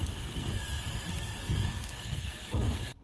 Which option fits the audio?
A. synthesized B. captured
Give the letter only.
A